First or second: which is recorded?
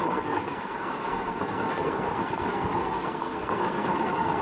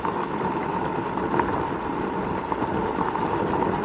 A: second